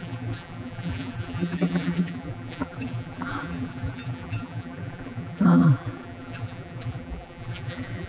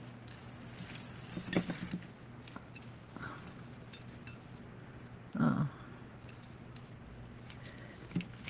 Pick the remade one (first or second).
first